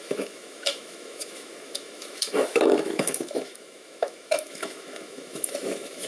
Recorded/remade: remade